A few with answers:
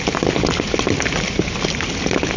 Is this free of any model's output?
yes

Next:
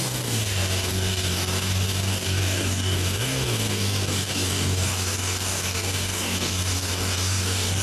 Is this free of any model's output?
no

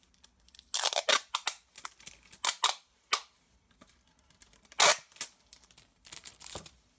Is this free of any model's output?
yes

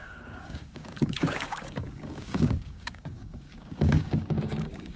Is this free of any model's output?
no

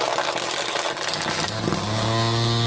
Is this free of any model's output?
yes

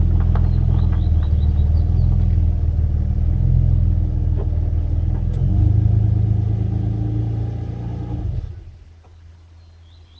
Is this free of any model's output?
yes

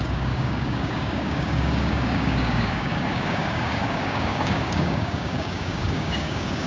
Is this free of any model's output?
no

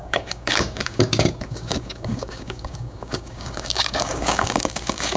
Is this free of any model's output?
no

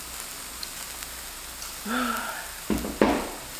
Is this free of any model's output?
yes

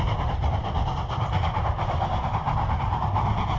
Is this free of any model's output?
yes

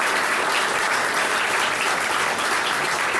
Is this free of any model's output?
yes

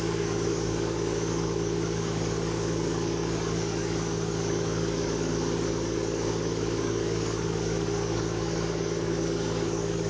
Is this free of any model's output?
no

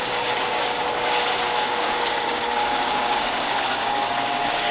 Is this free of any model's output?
no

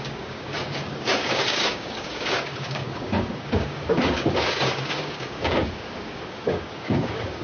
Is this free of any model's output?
no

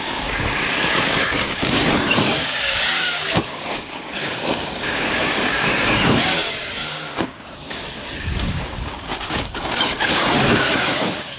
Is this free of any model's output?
no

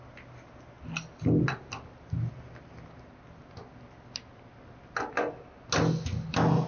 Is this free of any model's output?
yes